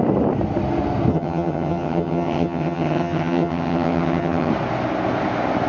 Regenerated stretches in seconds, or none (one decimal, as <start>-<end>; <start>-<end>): 1.1-4.5